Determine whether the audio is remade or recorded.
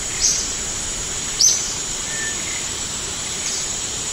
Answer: remade